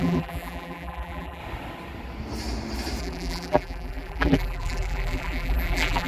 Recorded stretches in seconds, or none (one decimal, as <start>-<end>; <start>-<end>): 1.4-3.0